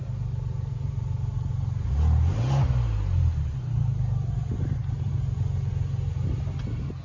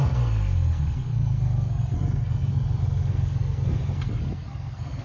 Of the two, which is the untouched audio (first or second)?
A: first